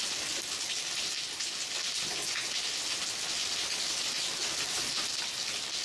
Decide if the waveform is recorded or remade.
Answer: recorded